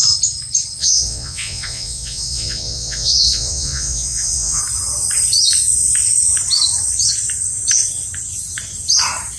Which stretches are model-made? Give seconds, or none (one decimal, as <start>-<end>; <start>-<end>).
0.8-4.6